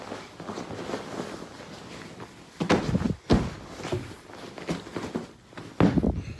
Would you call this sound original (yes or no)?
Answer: yes